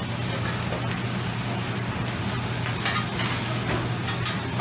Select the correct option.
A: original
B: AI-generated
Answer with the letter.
A